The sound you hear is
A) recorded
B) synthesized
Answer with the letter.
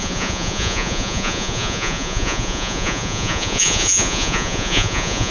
B